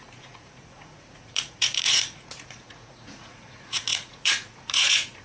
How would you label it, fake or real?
fake